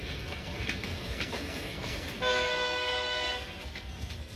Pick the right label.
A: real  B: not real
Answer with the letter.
B